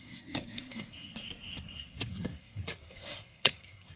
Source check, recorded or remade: remade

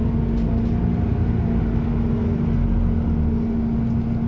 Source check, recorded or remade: recorded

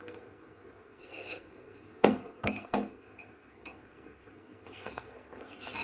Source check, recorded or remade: remade